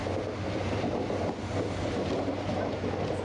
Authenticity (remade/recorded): recorded